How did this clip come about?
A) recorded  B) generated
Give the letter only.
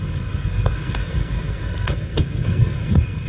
B